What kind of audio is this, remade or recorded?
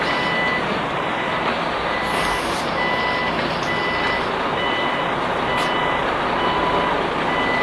recorded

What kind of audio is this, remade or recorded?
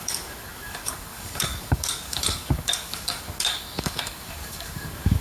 remade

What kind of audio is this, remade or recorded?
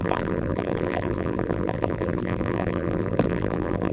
remade